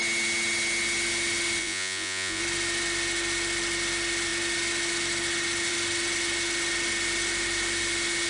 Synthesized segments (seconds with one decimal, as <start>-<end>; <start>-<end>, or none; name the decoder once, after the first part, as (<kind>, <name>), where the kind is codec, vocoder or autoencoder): 1.6-2.4 (vocoder, Vocos)